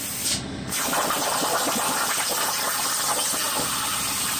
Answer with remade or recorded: recorded